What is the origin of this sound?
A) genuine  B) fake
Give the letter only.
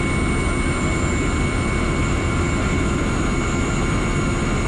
A